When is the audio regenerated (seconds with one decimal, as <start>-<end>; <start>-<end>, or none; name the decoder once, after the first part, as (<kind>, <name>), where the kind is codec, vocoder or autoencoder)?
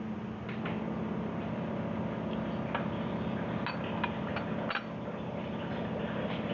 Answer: none